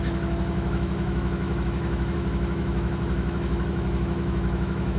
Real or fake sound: fake